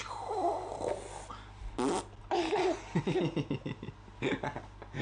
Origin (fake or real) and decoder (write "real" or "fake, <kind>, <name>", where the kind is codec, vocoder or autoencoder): real